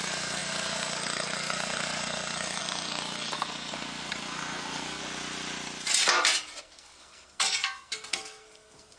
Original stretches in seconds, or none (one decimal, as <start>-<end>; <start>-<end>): 5.0-6.6